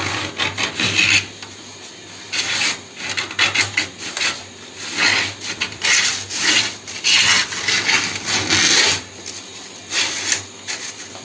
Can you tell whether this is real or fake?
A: real